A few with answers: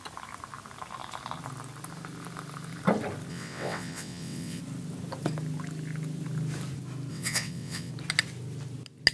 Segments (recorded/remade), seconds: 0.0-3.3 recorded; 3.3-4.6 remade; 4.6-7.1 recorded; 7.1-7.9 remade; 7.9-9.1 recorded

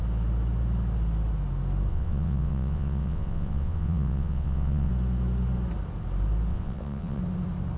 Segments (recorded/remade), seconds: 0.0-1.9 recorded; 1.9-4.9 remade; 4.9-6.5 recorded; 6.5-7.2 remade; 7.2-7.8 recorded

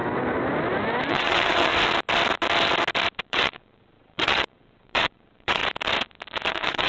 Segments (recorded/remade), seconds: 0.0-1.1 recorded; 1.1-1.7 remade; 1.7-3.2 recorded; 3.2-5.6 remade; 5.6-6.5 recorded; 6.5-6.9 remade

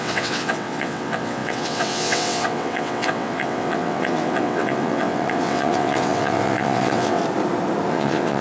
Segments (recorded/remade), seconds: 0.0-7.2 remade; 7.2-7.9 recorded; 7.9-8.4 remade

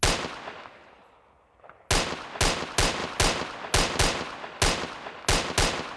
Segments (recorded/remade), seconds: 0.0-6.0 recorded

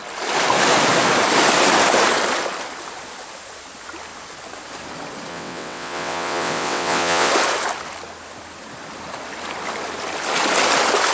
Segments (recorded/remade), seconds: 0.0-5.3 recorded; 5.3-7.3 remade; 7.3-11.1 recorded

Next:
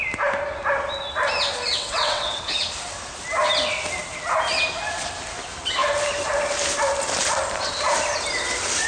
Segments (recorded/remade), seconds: 0.0-1.7 recorded; 1.7-2.4 remade; 2.4-8.9 recorded

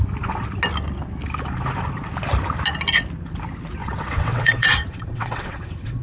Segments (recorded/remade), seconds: 0.0-3.8 recorded; 3.8-6.0 remade